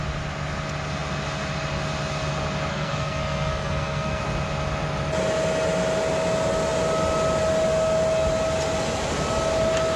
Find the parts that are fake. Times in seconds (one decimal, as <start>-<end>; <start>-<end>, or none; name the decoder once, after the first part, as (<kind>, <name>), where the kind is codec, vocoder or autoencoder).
2.7-4.2 (codec, SNAC)